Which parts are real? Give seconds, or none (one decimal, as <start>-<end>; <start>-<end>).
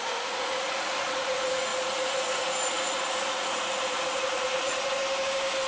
5.0-5.7